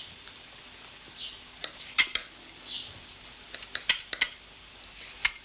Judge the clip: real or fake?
real